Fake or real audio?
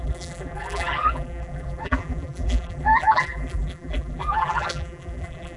fake